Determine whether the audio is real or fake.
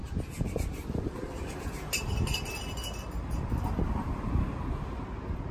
real